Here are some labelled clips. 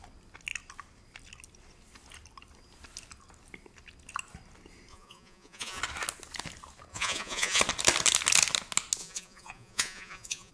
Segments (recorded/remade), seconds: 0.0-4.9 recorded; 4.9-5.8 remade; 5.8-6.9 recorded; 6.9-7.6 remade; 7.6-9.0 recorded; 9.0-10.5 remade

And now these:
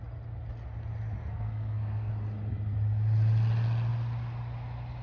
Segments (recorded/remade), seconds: 0.0-1.3 recorded; 1.3-2.1 remade; 2.1-5.0 recorded

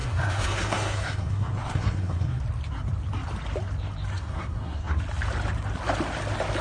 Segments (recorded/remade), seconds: 0.0-2.4 remade; 2.4-4.1 recorded; 4.1-5.0 remade; 5.0-6.6 recorded

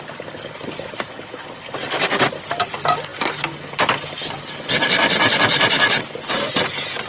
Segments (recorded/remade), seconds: 0.0-7.1 recorded